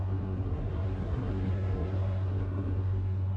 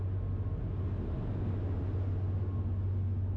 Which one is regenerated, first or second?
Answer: first